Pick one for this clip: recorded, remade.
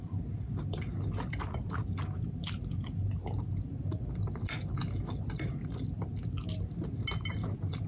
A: recorded